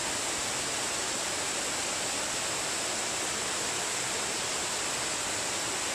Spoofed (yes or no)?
no